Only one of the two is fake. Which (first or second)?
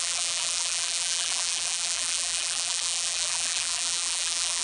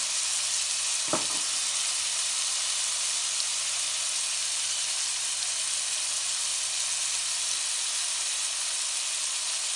first